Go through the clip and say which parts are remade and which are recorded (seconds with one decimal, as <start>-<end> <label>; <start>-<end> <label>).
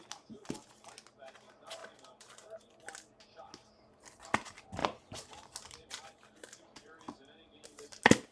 0.0-8.3 recorded